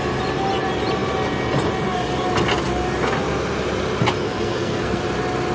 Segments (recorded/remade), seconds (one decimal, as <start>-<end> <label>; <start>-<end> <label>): 0.0-4.2 recorded; 4.2-5.0 remade; 5.0-5.5 recorded

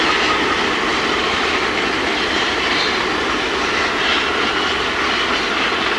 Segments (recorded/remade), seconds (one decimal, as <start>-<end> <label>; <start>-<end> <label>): 0.0-6.0 recorded

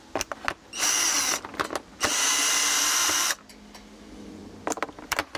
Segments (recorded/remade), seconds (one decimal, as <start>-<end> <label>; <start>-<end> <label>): 0.0-5.4 recorded

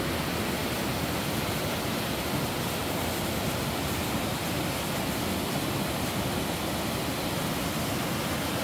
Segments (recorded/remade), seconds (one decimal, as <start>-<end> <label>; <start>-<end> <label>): 0.0-8.6 recorded

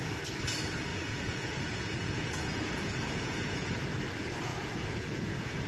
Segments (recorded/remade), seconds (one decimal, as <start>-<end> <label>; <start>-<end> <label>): 0.0-0.9 recorded; 0.9-3.8 remade; 3.8-4.5 recorded; 4.5-5.7 remade

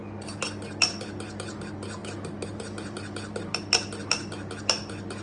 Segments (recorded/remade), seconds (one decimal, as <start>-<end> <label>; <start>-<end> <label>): 0.0-5.2 recorded

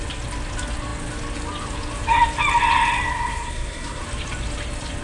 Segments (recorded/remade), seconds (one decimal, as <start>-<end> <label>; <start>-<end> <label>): 0.0-3.1 recorded; 3.1-4.0 remade; 4.0-5.0 recorded